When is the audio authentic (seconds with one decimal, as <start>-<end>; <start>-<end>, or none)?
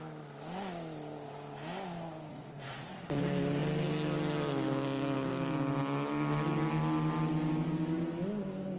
0.0-2.3; 3.2-8.8